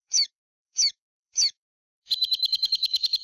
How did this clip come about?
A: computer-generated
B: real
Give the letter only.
A